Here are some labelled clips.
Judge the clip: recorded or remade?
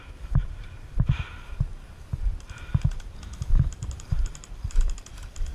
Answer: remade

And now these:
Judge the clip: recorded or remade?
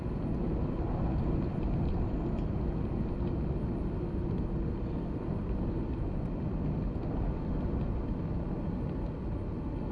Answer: recorded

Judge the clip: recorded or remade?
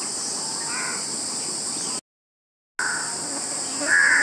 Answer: recorded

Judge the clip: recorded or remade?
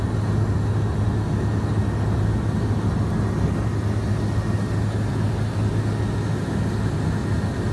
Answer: recorded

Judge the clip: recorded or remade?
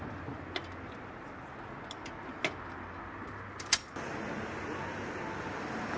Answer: recorded